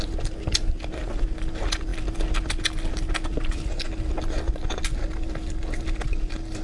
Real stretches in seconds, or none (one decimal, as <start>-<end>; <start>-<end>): 0.0-6.6